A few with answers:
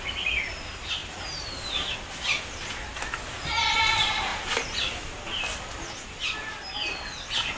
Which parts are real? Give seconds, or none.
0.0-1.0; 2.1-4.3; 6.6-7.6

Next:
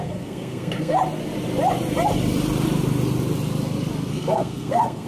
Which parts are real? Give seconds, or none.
1.0-4.1

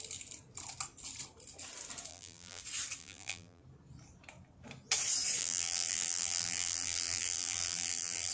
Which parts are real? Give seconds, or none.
0.0-2.1; 2.6-3.0; 3.6-5.4

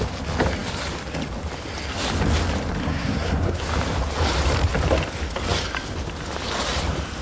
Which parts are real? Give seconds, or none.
0.0-2.8; 3.7-7.2

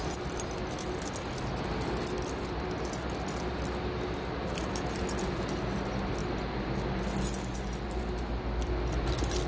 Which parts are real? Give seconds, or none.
0.0-9.5

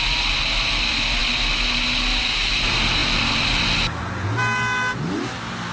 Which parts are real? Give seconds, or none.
0.0-5.7

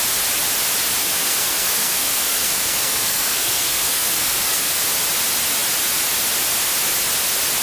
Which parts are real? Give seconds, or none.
0.0-1.0; 4.8-7.6